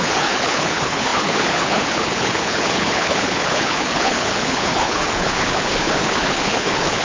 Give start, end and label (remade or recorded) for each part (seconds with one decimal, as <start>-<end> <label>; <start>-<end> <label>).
0.0-7.0 remade